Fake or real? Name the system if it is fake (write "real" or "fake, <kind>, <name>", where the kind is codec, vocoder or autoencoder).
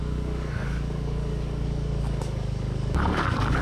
fake, codec, DAC